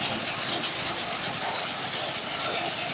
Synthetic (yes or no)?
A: no